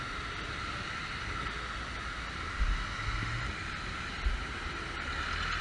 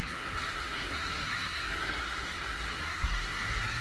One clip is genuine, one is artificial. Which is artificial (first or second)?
second